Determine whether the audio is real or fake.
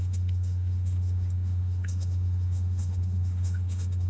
fake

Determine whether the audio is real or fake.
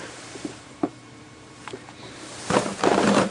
fake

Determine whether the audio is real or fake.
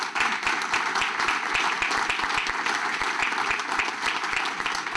real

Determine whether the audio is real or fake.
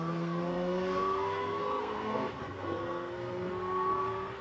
fake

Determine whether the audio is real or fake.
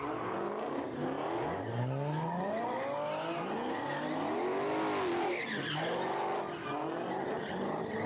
real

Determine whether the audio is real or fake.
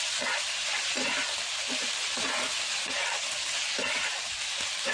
real